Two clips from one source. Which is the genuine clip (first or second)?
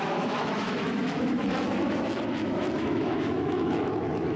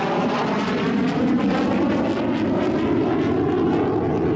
second